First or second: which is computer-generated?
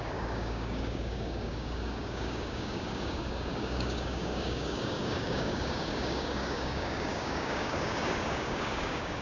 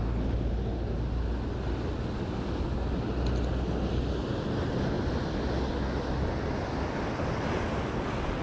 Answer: first